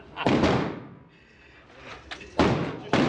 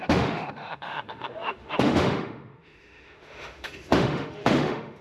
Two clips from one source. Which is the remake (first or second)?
second